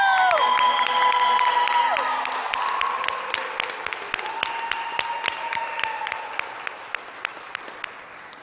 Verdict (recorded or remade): recorded